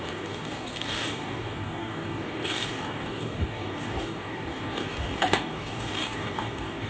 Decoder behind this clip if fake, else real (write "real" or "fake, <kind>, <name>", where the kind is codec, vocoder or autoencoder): fake, codec, DAC